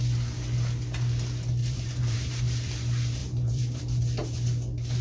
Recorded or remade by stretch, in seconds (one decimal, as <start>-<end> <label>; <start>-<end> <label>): 0.0-1.6 recorded; 1.6-2.4 remade; 2.4-3.2 recorded; 3.2-3.8 remade; 3.8-5.0 recorded